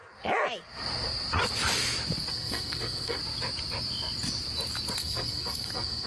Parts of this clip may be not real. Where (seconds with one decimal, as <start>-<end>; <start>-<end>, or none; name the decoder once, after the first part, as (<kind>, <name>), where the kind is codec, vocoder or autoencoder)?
2.3-3.2 (codec, SNAC); 5.0-6.1